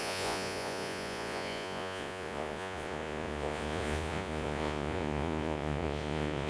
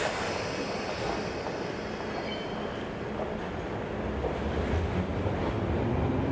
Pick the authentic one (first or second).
second